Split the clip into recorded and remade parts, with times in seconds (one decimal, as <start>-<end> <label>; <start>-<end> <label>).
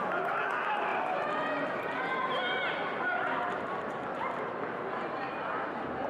0.0-6.1 recorded